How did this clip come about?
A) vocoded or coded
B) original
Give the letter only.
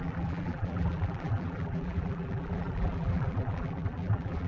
A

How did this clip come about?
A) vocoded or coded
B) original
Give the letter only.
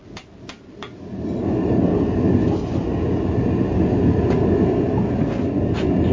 B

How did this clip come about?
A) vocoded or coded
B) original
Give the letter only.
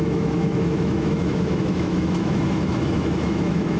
A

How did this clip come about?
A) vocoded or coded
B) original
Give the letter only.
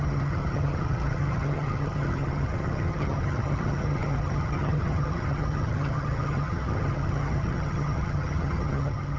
A